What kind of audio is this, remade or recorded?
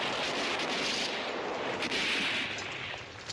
recorded